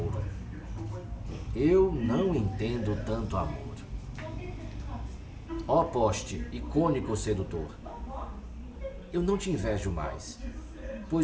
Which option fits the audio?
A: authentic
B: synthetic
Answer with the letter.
A